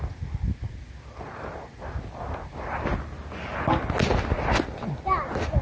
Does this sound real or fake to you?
real